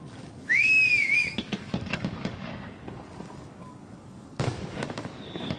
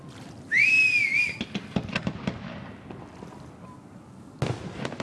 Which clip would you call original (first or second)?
second